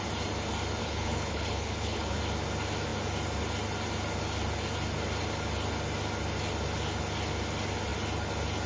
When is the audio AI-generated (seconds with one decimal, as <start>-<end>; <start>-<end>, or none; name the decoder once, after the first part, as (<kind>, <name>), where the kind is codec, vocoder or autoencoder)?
0.8-2.2 (codec, HILCodec)